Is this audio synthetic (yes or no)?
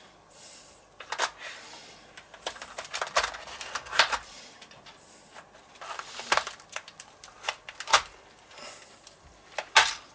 yes